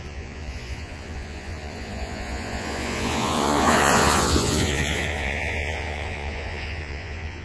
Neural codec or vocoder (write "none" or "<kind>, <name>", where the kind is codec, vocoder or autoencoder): vocoder, Vocos